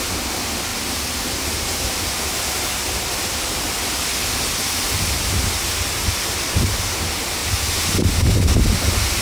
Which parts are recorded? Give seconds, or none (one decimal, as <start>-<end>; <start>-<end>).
0.0-0.7; 2.1-7.4; 7.9-9.2

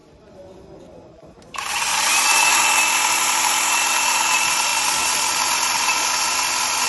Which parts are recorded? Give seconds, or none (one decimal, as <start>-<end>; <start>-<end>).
0.0-6.9

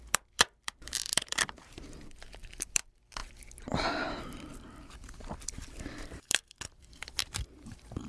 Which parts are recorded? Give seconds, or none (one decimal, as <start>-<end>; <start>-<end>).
3.2-4.2

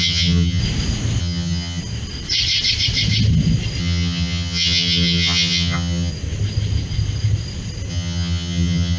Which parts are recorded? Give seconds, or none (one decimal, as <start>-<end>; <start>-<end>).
0.6-1.2; 1.8-3.8; 6.1-7.9